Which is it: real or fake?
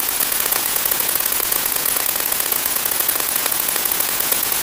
fake